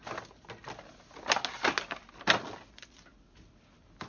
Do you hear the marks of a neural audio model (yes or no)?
no